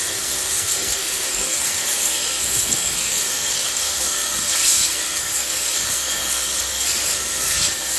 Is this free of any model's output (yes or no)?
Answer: no